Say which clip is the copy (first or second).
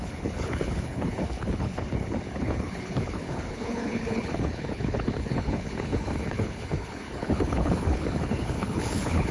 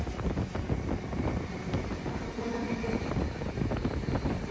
first